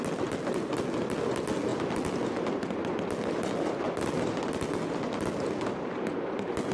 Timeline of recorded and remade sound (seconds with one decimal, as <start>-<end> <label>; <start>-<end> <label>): 0.0-6.7 recorded